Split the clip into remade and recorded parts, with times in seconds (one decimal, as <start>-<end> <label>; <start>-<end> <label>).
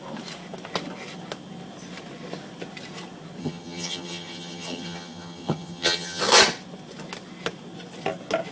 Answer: 0.0-3.4 recorded; 3.4-6.2 remade; 6.2-8.5 recorded